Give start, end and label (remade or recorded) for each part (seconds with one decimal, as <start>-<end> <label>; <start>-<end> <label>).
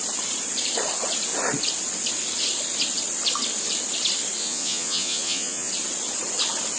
0.0-4.4 recorded; 4.4-5.7 remade; 5.7-6.8 recorded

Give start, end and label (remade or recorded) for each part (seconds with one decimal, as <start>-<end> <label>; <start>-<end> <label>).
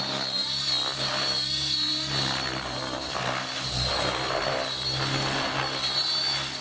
0.0-6.6 recorded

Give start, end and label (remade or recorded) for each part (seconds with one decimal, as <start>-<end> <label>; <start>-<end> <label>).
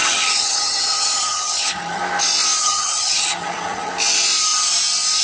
0.0-2.0 remade; 2.0-2.6 recorded; 2.6-3.9 remade; 3.9-5.2 recorded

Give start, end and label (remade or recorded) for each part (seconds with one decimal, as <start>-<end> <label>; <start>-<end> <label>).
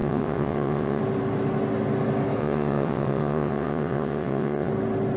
0.0-1.0 remade; 1.0-2.4 recorded; 2.4-4.7 remade; 4.7-5.2 recorded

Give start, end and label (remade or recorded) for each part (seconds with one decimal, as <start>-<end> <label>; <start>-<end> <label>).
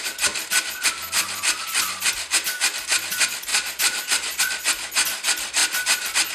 0.0-3.5 recorded; 3.5-4.4 remade; 4.4-6.3 recorded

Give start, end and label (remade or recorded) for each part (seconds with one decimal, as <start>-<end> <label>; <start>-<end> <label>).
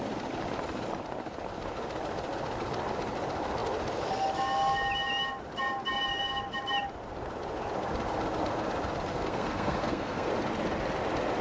0.0-9.1 recorded; 9.1-10.3 remade; 10.3-11.4 recorded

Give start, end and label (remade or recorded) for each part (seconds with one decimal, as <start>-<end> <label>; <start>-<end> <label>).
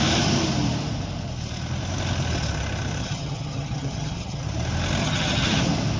0.0-3.0 recorded; 3.0-4.4 remade; 4.4-5.0 recorded; 5.0-5.6 remade; 5.6-6.0 recorded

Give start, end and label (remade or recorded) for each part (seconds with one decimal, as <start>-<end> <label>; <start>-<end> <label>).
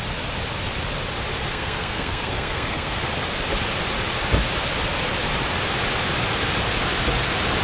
0.0-1.5 recorded; 1.5-3.1 remade; 3.1-7.6 recorded